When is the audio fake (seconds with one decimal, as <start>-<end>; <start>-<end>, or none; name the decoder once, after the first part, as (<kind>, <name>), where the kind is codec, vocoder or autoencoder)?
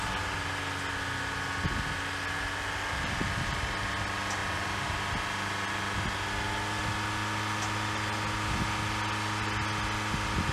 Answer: none